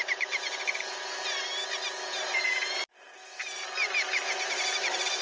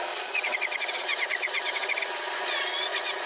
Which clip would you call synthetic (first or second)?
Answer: second